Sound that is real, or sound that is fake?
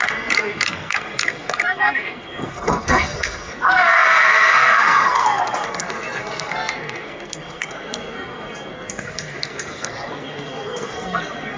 fake